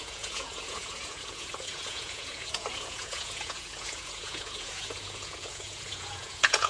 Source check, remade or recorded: remade